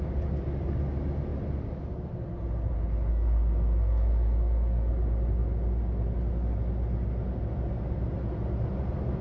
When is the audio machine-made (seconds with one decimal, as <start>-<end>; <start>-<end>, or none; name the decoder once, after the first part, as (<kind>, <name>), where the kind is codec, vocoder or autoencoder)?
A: 3.1-4.9 (codec, SNAC)